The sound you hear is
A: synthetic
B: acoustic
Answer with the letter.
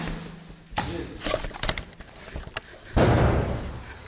B